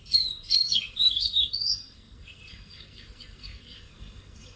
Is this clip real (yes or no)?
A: no